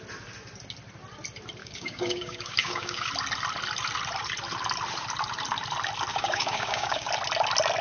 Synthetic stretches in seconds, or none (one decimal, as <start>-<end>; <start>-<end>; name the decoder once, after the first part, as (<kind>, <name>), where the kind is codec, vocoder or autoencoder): 1.6-3.1 (codec, DAC); 6.1-7.1